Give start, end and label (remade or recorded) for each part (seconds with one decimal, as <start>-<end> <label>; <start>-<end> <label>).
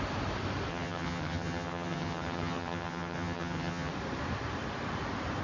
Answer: 0.0-0.7 recorded; 0.7-3.9 remade; 3.9-5.4 recorded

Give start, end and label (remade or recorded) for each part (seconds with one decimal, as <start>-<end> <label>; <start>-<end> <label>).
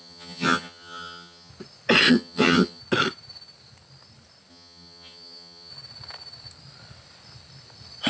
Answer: 0.0-1.5 remade; 1.5-2.1 recorded; 2.1-2.8 remade; 2.8-4.5 recorded; 4.5-5.7 remade; 5.7-8.1 recorded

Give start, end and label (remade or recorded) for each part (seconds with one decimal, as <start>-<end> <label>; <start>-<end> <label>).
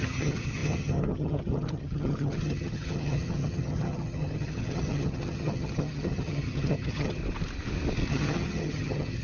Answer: 0.0-7.2 remade; 7.2-8.1 recorded; 8.1-9.2 remade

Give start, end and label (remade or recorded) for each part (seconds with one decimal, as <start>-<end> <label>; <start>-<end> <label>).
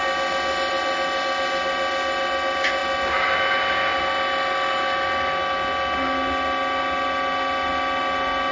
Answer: 0.0-8.5 recorded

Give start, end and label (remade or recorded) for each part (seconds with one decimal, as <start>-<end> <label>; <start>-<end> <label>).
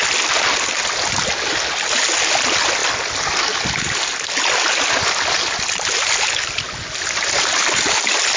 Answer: 0.0-8.4 recorded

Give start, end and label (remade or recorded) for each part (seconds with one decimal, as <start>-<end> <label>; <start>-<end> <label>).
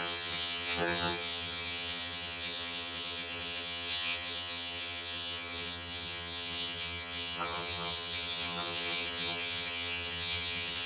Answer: 0.0-10.9 remade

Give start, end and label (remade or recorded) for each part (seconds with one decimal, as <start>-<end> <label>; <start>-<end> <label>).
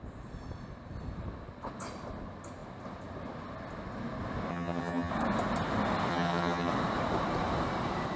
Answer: 0.0-4.5 recorded; 4.5-5.1 remade; 5.1-6.1 recorded; 6.1-6.7 remade; 6.7-8.2 recorded